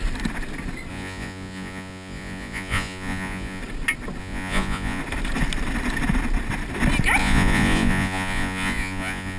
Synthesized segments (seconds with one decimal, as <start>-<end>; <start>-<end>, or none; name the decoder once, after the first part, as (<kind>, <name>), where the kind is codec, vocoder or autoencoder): 0.9-3.6 (vocoder, Vocos); 4.2-5.0; 7.2-9.4